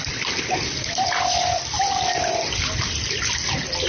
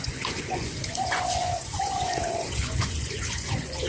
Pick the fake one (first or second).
second